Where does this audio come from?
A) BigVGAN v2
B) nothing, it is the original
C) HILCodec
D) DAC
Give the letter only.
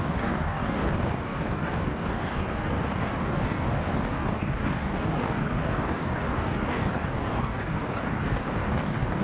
D